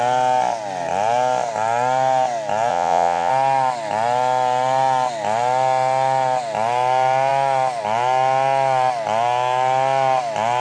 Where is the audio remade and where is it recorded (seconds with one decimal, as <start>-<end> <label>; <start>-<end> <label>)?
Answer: 0.0-2.7 recorded; 2.7-3.3 remade; 3.3-10.6 recorded